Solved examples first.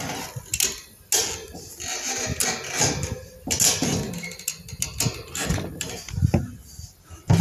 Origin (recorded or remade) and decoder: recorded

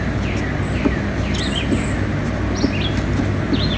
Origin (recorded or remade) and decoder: recorded